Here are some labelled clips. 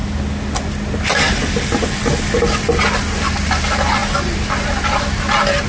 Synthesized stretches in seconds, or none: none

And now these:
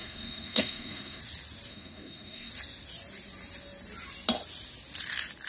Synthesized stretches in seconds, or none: 0.0-1.2 (codec, SNAC); 1.7-2.5

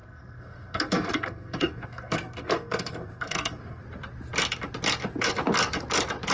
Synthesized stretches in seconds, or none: 0.0-3.8 (codec, SNAC)